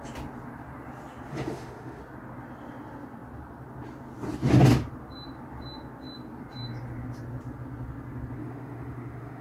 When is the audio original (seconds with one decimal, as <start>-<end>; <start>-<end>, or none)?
0.0-1.3; 2.0-8.4